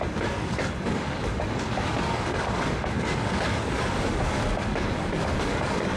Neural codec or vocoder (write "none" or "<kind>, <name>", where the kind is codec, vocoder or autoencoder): codec, DAC